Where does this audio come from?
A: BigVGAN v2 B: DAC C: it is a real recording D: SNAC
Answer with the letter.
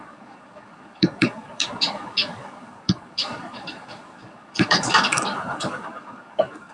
B